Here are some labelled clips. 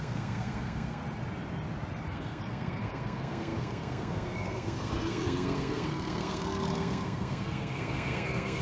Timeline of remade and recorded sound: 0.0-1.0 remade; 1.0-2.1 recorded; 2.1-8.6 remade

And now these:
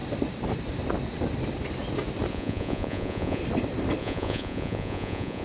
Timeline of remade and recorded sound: 0.0-2.3 recorded; 2.3-3.4 remade; 3.4-4.0 recorded; 4.0-5.4 remade

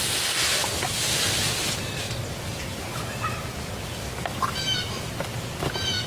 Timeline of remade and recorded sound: 0.0-6.1 recorded

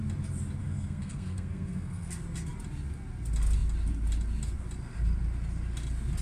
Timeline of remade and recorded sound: 0.0-0.6 recorded; 0.6-2.1 remade; 2.1-6.2 recorded